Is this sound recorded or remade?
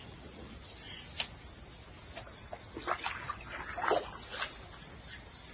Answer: recorded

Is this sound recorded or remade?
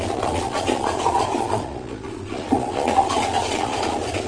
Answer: remade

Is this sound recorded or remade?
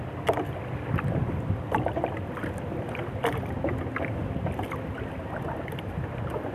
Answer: recorded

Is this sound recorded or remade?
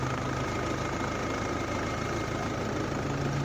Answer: recorded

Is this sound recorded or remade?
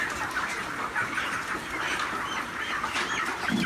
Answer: recorded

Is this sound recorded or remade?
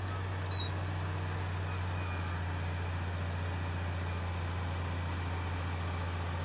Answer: recorded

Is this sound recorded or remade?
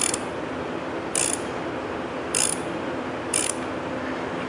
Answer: recorded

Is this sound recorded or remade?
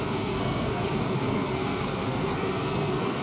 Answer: remade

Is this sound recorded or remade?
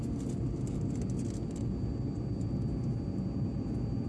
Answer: recorded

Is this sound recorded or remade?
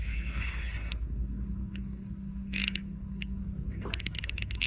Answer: remade